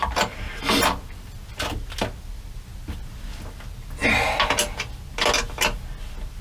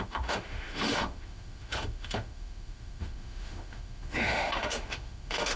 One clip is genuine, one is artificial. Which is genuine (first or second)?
first